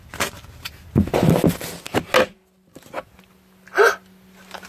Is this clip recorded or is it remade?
recorded